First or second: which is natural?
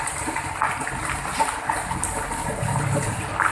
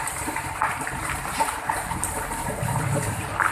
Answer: first